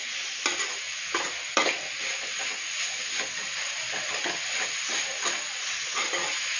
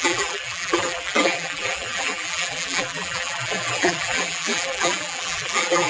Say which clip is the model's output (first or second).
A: second